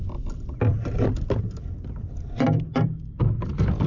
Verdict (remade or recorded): recorded